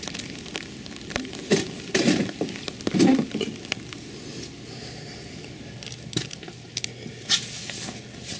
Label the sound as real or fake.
real